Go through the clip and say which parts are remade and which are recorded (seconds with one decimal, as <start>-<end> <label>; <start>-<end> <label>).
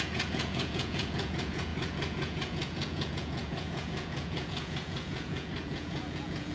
0.0-6.5 remade